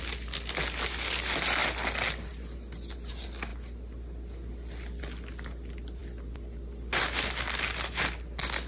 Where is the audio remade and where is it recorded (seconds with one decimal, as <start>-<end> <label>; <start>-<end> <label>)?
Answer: 0.0-8.7 recorded